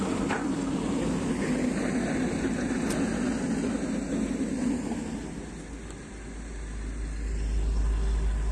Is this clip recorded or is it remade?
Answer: recorded